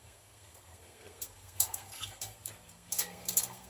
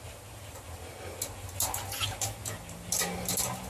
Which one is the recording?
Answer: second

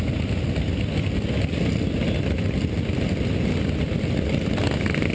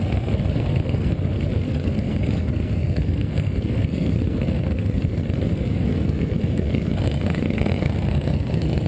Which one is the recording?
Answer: first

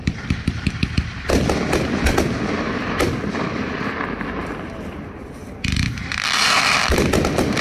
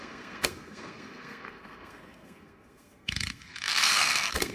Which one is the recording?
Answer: first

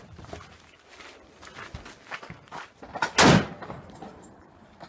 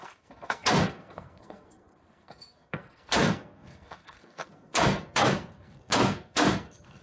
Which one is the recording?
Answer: first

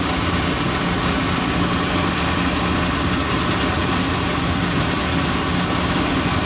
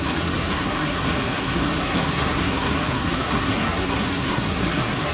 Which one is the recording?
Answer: first